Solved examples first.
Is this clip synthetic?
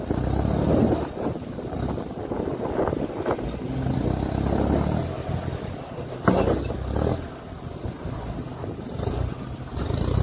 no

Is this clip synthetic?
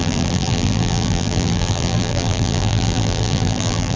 yes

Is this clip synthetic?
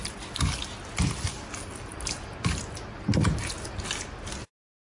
no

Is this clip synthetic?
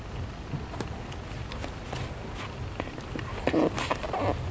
no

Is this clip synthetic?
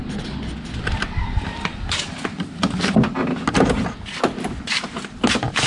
no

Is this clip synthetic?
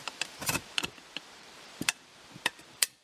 yes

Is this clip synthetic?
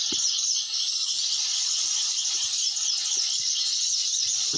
no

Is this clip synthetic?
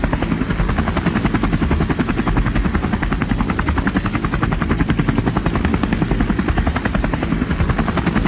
no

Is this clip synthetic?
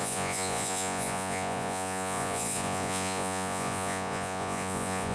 yes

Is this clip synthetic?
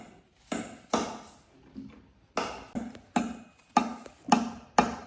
no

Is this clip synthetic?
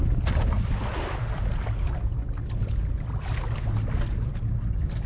no